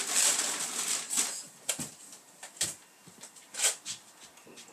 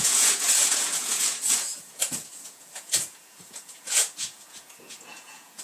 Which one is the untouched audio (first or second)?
first